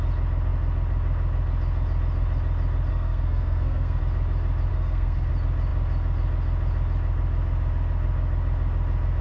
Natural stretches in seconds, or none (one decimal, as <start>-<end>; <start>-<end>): 0.0-2.9; 4.0-4.7; 5.3-9.2